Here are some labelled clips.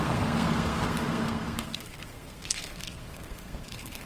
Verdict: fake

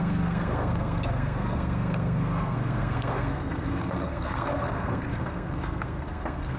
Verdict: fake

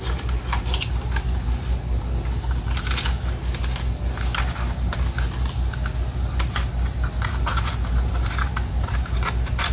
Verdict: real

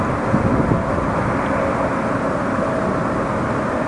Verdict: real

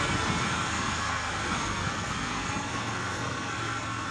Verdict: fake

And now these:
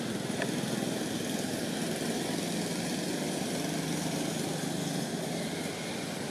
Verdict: real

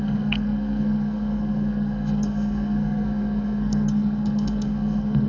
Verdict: fake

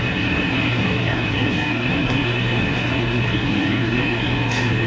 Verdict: fake